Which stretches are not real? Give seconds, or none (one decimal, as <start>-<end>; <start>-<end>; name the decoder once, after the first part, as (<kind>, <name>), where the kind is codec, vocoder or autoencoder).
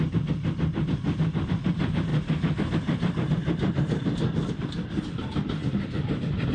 none